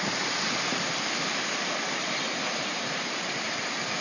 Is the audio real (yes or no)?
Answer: no